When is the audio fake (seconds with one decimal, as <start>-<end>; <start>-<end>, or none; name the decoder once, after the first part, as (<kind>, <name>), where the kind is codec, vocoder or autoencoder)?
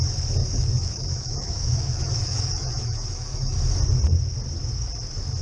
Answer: 0.4-3.6 (autoencoder, DAC-VAE)